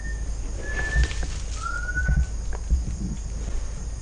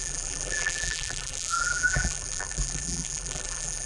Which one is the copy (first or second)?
second